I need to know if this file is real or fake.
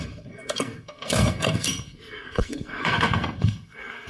fake